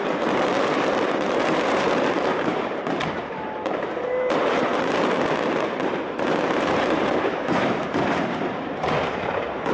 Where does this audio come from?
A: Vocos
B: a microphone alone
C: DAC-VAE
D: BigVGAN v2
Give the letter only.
D